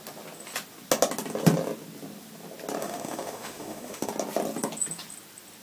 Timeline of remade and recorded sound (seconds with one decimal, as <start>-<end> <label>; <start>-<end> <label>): 0.0-2.8 recorded; 2.8-4.1 remade; 4.1-5.6 recorded